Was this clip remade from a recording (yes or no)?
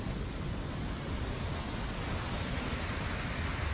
no